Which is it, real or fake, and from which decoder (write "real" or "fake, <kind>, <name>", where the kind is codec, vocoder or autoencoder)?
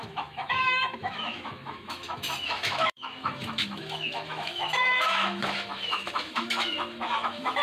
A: fake, autoencoder, DAC-VAE